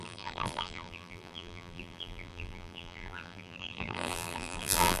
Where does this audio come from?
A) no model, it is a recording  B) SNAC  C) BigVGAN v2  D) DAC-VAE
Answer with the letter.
C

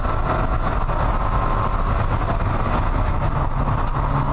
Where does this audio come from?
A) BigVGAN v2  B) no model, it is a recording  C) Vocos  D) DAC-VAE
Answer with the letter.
B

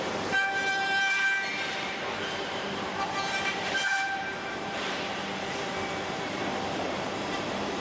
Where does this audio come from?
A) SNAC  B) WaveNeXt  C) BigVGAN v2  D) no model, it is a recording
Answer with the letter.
C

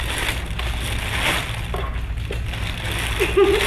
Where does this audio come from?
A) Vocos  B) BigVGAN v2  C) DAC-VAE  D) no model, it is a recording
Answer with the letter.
D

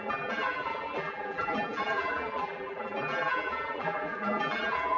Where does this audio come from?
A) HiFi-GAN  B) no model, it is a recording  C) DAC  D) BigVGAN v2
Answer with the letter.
D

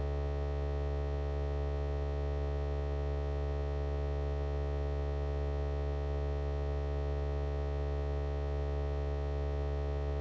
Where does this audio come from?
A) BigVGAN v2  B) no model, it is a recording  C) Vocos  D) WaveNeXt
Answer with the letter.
B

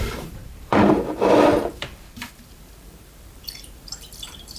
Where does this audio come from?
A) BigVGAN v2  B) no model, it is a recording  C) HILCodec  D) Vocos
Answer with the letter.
A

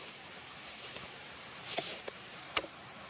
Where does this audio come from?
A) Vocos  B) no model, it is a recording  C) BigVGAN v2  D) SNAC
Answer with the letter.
C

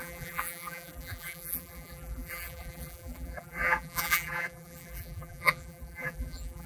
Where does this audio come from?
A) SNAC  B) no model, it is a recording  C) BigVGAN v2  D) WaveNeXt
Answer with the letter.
C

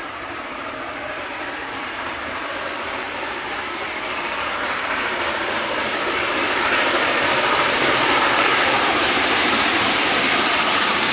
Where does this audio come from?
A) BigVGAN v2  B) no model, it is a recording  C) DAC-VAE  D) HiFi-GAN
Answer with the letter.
A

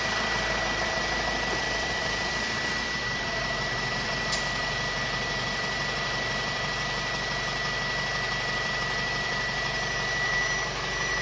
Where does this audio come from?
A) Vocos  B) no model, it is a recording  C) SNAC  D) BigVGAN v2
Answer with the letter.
D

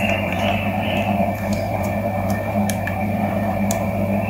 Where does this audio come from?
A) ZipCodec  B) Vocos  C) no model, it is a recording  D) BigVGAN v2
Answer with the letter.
D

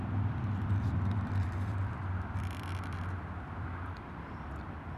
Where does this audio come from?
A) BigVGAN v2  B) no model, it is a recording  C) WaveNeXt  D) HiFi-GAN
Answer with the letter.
A